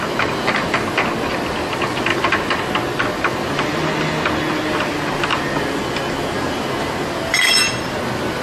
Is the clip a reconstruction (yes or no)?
no